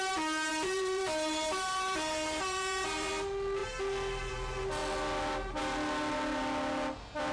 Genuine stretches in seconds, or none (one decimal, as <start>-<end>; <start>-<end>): 0.0-0.5; 3.1-7.3

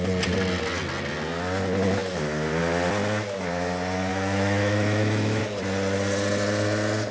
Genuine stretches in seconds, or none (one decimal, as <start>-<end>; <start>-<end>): 0.0-4.1; 5.4-7.1

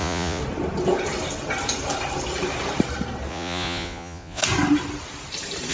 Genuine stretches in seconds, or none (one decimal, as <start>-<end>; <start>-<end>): 0.4-3.3; 4.4-5.7

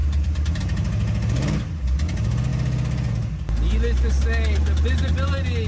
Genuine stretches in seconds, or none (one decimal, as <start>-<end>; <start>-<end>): 0.6-5.7

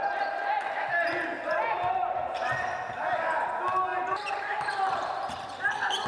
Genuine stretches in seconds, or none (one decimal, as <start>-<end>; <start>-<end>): 0.0-3.9; 5.6-6.1

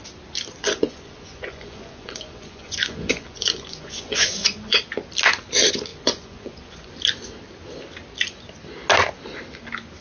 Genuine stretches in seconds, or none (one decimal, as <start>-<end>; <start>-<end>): 0.0-0.6; 4.8-5.9; 6.9-10.0

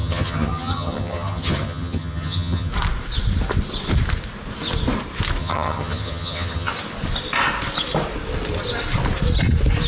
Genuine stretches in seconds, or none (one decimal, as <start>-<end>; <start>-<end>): 2.7-5.4; 6.7-9.9